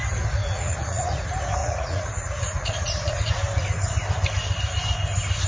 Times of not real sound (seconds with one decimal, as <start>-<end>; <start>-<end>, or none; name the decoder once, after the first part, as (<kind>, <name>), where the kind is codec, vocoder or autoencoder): 0.4-1.2 (vocoder, Vocos); 1.6-3.3